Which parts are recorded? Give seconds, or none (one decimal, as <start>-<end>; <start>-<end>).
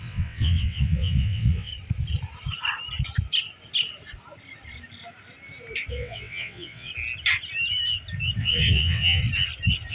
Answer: 1.7-5.9; 6.9-8.4; 9.2-9.9